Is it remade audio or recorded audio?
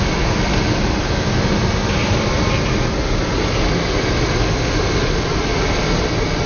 recorded